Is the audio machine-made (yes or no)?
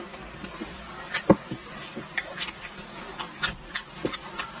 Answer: no